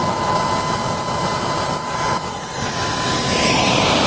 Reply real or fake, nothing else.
real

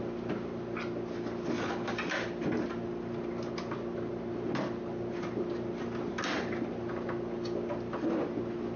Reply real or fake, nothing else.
real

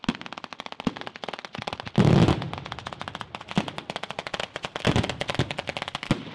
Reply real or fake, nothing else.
real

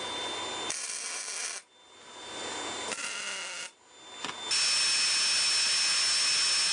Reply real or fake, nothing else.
real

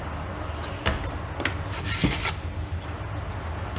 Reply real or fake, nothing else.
real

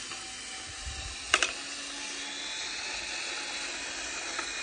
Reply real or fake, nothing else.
real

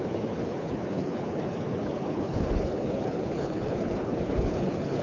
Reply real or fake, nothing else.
fake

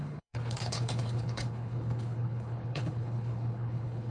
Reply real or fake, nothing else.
fake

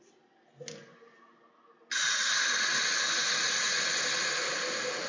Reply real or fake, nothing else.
real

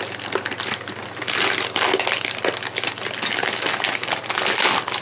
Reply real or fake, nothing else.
real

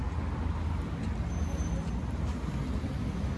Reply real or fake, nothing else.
real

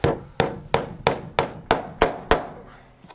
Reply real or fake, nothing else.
real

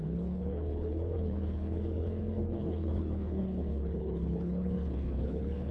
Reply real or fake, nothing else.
fake